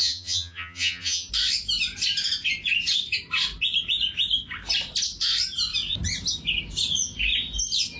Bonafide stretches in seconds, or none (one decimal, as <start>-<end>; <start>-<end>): 1.3-8.0